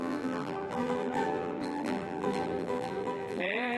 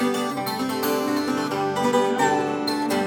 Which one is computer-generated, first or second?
first